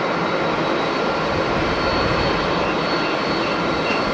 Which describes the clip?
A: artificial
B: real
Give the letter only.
B